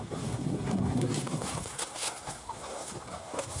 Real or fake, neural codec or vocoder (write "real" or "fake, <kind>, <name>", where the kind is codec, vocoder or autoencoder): fake, codec, SNAC